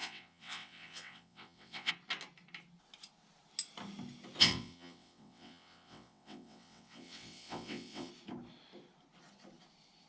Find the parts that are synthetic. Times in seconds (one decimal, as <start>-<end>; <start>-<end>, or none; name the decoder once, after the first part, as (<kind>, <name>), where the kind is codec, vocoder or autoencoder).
0.0-1.9 (vocoder, WaveNeXt); 4.4-8.1